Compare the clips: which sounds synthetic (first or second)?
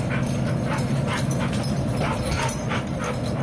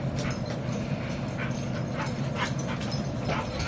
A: first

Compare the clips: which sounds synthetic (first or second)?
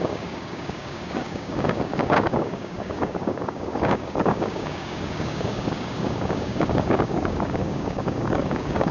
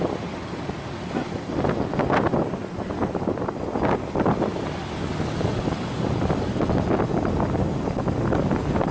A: first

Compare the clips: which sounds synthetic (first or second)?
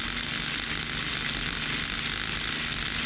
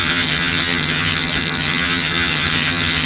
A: second